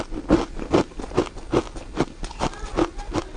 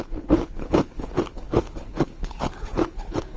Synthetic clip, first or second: second